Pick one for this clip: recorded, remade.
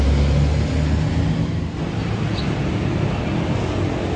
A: recorded